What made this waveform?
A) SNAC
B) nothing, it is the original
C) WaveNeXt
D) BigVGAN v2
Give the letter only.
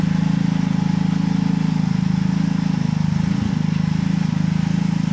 B